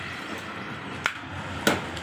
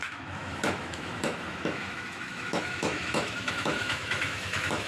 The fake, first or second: second